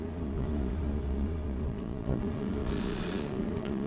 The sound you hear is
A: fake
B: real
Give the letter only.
A